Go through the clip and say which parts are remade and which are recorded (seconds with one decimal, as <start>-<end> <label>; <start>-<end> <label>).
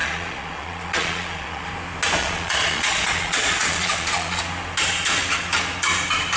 0.0-1.7 remade; 1.7-2.2 recorded; 2.2-4.4 remade; 4.4-6.4 recorded